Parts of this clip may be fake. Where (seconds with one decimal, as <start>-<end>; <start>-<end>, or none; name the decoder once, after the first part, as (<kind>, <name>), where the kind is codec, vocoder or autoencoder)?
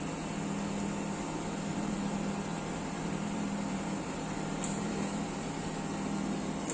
1.7-5.7 (vocoder, BigVGAN v2)